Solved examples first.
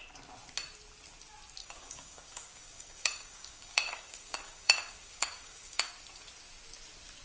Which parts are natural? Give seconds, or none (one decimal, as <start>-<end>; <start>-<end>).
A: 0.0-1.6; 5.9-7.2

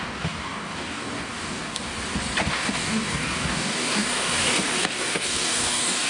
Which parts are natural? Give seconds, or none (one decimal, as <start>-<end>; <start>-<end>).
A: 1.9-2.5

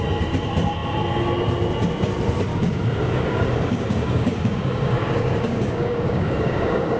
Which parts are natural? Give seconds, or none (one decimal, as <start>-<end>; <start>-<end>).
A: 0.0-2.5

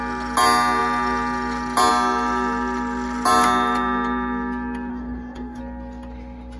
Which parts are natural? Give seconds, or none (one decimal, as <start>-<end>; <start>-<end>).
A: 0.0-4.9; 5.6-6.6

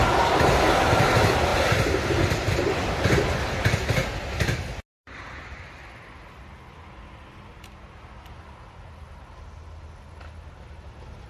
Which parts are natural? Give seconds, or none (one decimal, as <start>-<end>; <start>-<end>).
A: 0.0-11.3

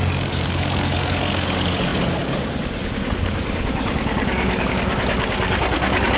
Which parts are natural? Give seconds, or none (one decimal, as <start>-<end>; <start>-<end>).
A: none